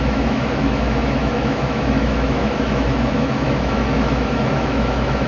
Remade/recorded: remade